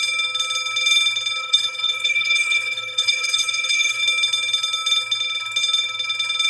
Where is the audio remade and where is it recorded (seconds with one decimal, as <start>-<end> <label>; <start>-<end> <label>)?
0.0-1.4 recorded; 1.4-4.0 remade; 4.0-6.5 recorded